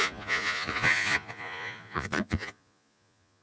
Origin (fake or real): fake